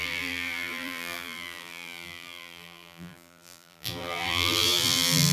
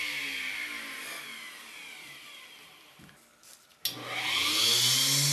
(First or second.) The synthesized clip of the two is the first